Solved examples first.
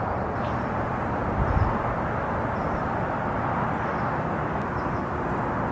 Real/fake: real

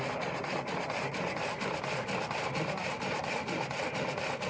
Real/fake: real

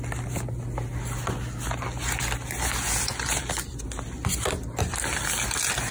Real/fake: real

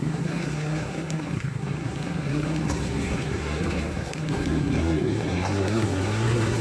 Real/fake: fake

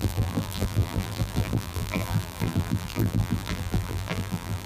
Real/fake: fake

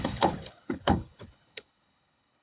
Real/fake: fake